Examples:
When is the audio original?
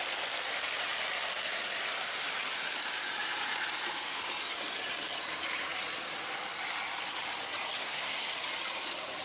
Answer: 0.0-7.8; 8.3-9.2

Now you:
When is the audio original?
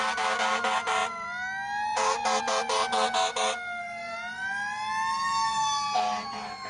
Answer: 0.0-6.7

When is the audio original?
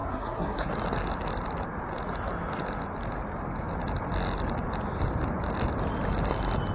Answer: 0.7-6.7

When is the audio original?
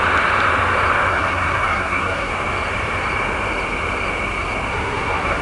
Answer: 0.0-1.1; 2.3-4.7